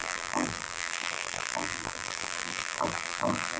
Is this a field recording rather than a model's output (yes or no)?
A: no